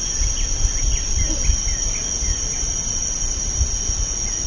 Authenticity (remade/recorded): recorded